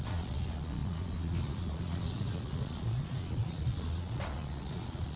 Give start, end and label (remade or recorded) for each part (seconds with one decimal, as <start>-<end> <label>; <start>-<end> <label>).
0.0-5.2 remade